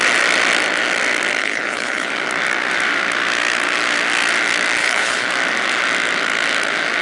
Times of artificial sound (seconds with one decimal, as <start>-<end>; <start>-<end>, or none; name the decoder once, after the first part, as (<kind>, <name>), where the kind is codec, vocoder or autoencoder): 1.4-2.1 (codec, HILCodec); 4.8-5.3